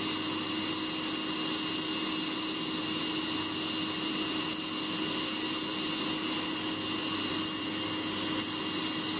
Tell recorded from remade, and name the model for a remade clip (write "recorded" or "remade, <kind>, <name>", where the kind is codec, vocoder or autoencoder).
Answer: recorded